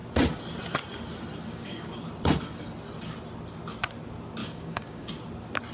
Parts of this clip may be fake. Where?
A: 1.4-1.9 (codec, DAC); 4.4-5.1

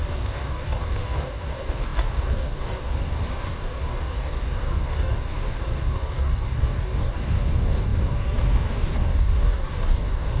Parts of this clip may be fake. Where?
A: 0.0-10.4 (codec, DAC)

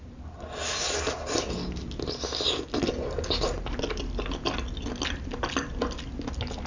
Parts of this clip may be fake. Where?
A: none

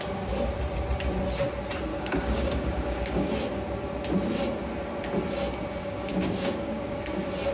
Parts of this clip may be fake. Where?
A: 1.9-3.3 (codec, DAC); 5.8-7.0